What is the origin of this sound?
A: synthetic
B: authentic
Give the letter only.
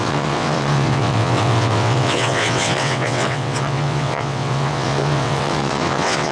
A